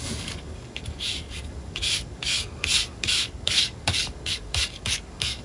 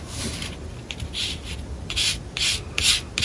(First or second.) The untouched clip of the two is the second